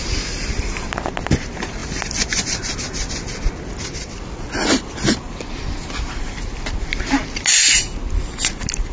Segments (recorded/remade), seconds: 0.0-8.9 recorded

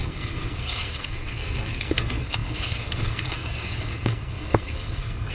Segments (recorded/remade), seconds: 0.0-5.3 remade